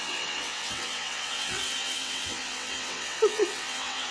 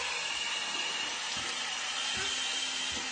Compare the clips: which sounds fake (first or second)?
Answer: first